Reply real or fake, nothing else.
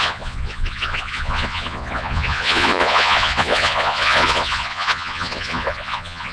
fake